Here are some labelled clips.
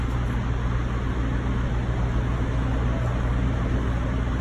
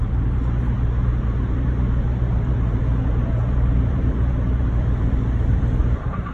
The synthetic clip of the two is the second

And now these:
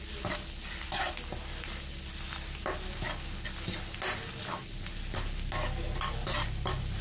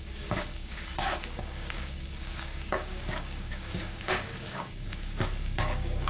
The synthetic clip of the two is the second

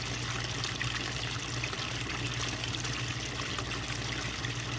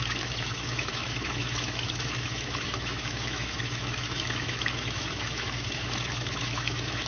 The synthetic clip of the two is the second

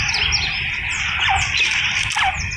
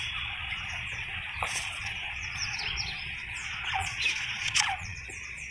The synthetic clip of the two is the second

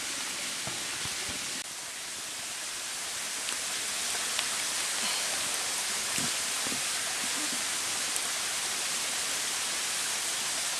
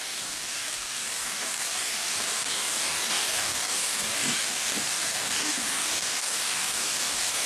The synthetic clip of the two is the second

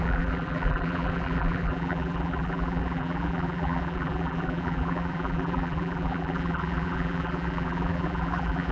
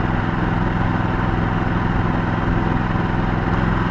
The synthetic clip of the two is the first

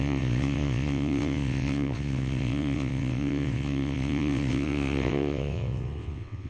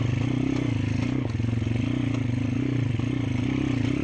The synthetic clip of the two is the first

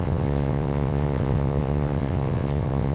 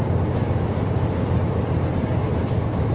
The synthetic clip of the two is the first